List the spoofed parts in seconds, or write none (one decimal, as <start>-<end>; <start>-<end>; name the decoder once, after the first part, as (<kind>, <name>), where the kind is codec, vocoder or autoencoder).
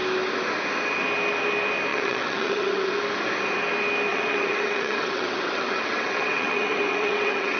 1.9-2.9 (vocoder, WaveNeXt); 4.1-7.6